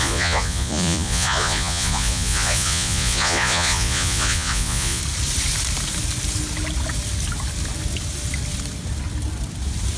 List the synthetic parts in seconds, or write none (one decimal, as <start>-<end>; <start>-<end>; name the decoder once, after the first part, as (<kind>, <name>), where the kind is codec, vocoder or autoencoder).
0.0-5.0 (vocoder, Vocos)